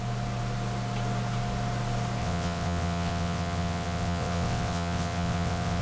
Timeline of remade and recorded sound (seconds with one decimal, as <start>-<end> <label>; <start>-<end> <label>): 0.0-2.2 recorded; 2.2-5.8 remade